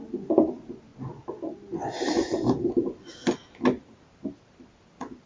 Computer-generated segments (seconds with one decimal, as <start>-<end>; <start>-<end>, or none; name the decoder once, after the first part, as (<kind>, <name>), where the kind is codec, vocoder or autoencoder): none